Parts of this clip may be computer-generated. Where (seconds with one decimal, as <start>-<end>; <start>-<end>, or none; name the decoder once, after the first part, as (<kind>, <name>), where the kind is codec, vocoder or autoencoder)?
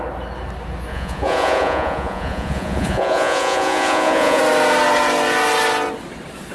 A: 0.9-4.4 (vocoder, Vocos)